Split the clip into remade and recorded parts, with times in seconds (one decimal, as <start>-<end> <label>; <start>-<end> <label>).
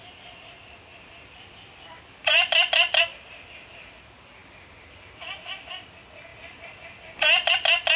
0.0-0.9 recorded; 0.9-3.0 remade; 3.0-6.3 recorded; 6.3-7.5 remade; 7.5-8.0 recorded